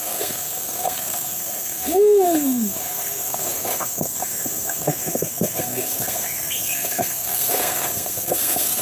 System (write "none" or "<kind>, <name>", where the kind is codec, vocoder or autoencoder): codec, SNAC